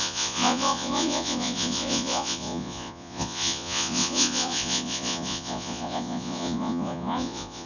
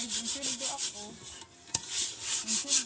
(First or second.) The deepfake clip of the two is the first